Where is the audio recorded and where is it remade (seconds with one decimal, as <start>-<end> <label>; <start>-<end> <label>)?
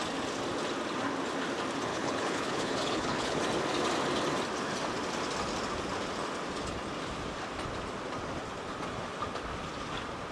0.0-1.9 recorded; 1.9-3.4 remade; 3.4-10.3 recorded